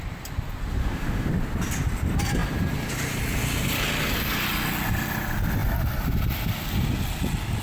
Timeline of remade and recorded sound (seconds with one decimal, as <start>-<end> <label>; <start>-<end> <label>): 0.0-0.8 recorded; 0.8-1.3 remade; 1.3-7.6 recorded